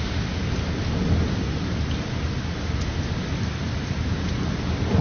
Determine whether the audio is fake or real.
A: real